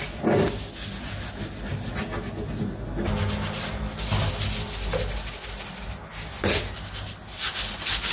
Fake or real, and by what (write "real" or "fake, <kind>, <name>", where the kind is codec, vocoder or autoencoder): real